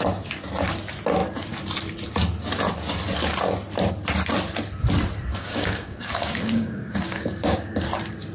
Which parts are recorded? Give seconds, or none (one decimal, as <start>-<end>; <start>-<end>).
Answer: 0.0-5.3; 7.8-8.3